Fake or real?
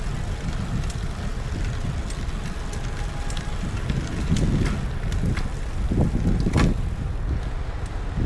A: real